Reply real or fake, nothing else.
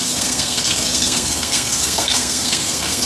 fake